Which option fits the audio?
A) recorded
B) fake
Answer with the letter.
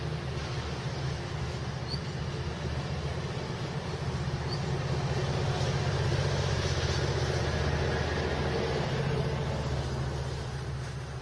A